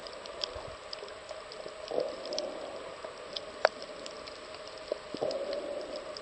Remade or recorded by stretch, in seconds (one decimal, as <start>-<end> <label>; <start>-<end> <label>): 0.0-6.2 recorded